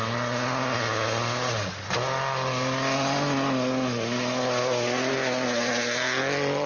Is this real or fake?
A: real